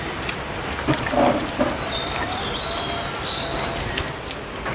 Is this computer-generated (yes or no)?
no